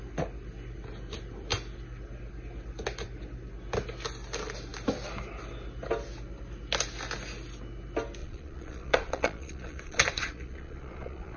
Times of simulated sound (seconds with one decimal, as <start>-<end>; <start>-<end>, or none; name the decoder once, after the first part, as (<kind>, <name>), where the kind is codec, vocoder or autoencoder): 8.2-11.4 (vocoder, Vocos)